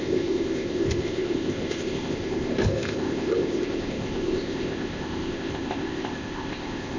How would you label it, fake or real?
fake